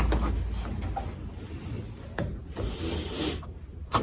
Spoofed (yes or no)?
no